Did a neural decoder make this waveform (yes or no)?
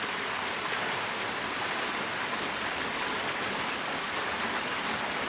no